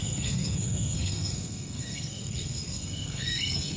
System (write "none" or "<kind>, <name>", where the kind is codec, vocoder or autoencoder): codec, SNAC